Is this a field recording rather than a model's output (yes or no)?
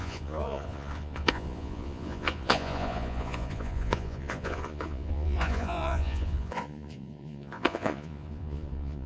no